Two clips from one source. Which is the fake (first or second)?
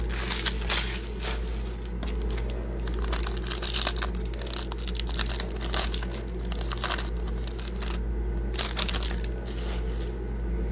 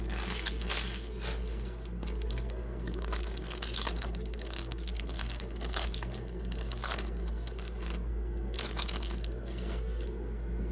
second